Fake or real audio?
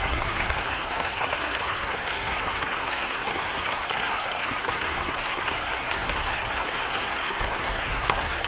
fake